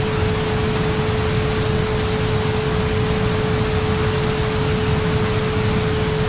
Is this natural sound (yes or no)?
yes